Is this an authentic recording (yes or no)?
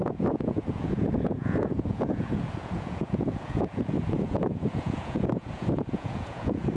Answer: no